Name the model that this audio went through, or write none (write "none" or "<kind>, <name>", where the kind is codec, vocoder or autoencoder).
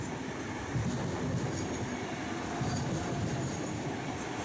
none